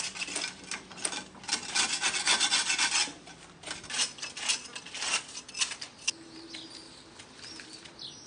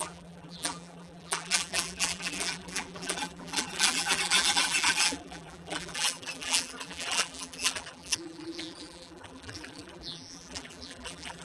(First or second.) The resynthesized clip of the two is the second